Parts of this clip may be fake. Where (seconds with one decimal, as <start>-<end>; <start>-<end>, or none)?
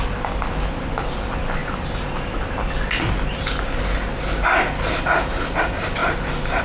none